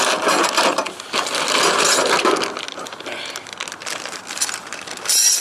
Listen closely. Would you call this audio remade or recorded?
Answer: recorded